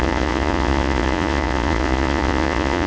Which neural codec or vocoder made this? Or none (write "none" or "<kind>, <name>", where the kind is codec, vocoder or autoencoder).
vocoder, Vocos